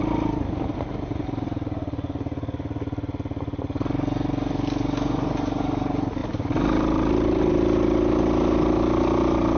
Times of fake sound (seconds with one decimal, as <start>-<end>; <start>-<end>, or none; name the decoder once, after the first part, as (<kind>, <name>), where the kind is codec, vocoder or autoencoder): 6.2-7.5 (vocoder, BigVGAN v2)